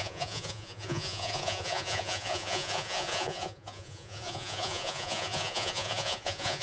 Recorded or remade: remade